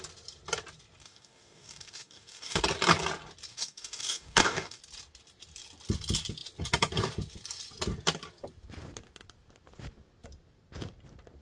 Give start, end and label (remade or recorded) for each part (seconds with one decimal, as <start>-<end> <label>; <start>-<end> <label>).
0.0-1.0 recorded; 1.0-2.6 remade; 2.6-3.5 recorded; 3.5-4.8 remade; 4.8-11.4 recorded